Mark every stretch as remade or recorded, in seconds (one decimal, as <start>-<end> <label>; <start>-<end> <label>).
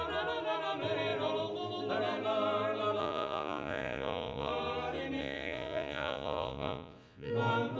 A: 0.0-3.0 recorded; 3.0-4.5 remade; 4.5-5.2 recorded; 5.2-7.3 remade; 7.3-7.8 recorded